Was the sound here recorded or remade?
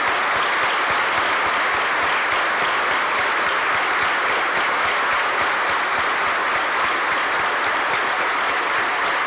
recorded